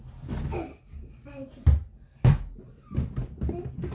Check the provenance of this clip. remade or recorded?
recorded